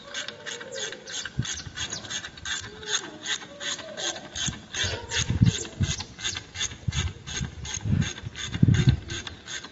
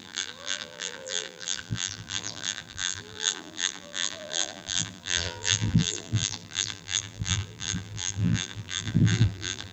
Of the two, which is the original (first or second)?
first